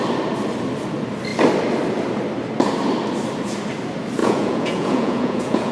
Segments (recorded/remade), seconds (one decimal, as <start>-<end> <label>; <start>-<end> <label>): 0.0-4.2 recorded; 4.2-5.7 remade